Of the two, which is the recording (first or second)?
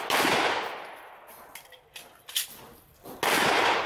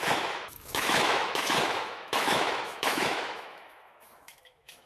first